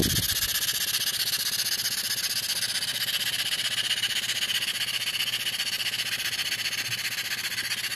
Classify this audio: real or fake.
real